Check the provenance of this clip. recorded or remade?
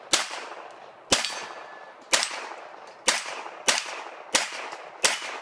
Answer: recorded